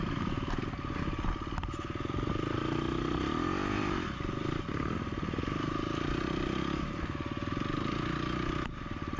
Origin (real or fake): real